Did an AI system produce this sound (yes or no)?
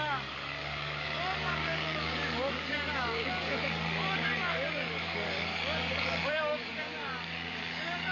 yes